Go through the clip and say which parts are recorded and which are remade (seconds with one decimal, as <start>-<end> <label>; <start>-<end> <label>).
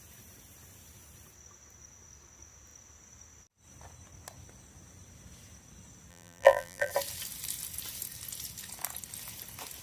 0.0-6.1 recorded; 6.1-6.9 remade; 6.9-9.8 recorded